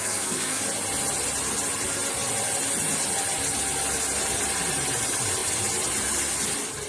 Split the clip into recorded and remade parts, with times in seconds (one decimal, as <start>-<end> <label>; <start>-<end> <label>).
0.0-0.6 remade; 0.6-6.9 recorded

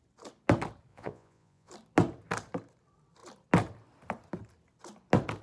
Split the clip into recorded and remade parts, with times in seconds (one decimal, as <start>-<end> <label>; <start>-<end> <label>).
0.0-0.9 recorded; 0.9-1.7 remade; 1.7-5.4 recorded

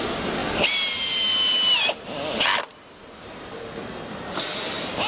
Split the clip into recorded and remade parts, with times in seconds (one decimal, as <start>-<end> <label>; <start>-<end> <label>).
0.0-5.1 recorded

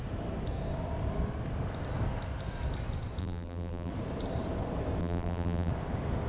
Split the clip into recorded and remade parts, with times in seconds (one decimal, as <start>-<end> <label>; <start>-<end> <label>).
0.0-3.2 recorded; 3.2-3.9 remade; 3.9-5.0 recorded; 5.0-5.7 remade; 5.7-6.3 recorded

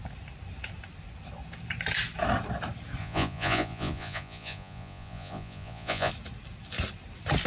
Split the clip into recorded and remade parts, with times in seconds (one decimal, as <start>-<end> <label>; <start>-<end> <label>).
0.0-3.0 recorded; 3.0-6.1 remade; 6.1-7.5 recorded

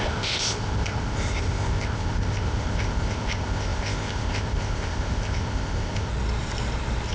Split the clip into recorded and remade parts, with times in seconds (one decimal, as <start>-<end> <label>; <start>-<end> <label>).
0.0-6.1 remade; 6.1-7.1 recorded

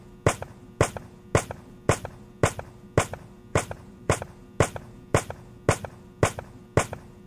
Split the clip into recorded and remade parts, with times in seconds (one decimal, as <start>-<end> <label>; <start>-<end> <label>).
0.0-3.5 recorded; 3.5-4.2 remade; 4.2-7.3 recorded

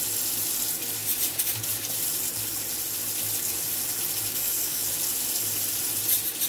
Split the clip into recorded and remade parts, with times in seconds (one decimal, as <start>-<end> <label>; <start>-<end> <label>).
0.0-4.3 recorded; 4.3-4.8 remade; 4.8-6.5 recorded